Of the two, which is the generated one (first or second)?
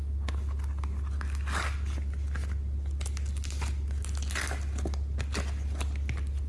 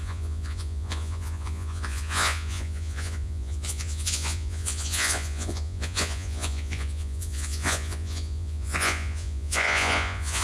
second